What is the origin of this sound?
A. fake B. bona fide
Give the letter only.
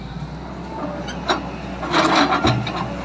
B